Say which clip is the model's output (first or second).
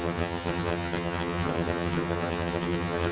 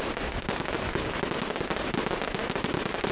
first